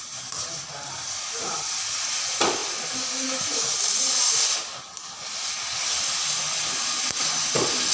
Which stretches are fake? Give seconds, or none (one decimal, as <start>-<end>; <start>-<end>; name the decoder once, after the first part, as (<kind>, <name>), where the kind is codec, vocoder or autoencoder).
none